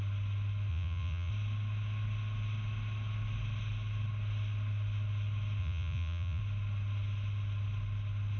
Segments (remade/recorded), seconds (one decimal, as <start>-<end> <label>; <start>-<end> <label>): 0.0-0.7 recorded; 0.7-1.3 remade; 1.3-5.6 recorded; 5.6-6.4 remade; 6.4-8.4 recorded